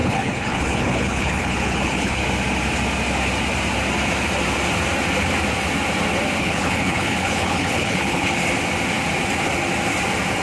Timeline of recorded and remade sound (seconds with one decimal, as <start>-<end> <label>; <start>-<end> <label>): 0.0-2.2 remade; 2.2-6.4 recorded; 6.4-8.4 remade; 8.4-10.4 recorded